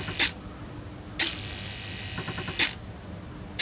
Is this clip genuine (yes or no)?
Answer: yes